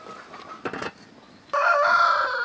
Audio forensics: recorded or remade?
recorded